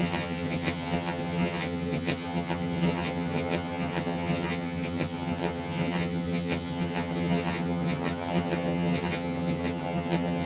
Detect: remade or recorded remade